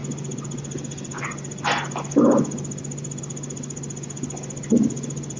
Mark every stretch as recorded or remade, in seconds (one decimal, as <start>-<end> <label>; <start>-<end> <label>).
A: 0.0-5.4 recorded